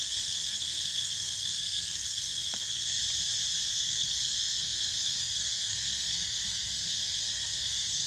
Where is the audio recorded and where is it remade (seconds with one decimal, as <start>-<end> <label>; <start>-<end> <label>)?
0.0-3.0 remade; 3.0-3.6 recorded; 3.6-8.1 remade